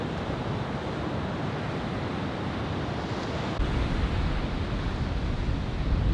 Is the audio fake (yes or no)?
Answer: no